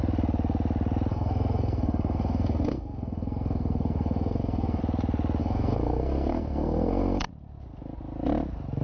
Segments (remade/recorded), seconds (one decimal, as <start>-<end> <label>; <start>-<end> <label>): 0.0-1.1 recorded; 1.1-4.8 remade; 4.8-5.4 recorded; 5.4-7.3 remade; 7.3-8.8 recorded